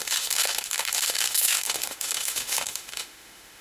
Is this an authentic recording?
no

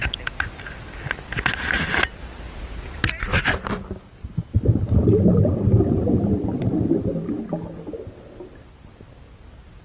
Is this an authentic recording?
yes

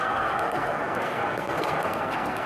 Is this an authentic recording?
no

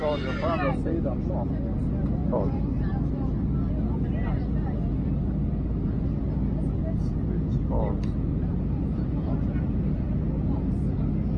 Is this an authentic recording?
yes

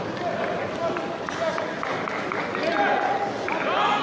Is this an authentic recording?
yes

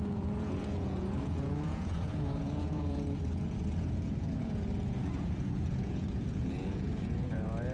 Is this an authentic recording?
no